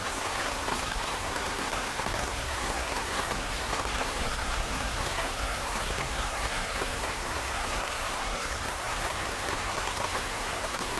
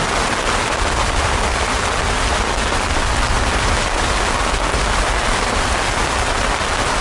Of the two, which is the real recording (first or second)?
second